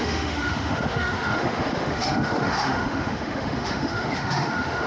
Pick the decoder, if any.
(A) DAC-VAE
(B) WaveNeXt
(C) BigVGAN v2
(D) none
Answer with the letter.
A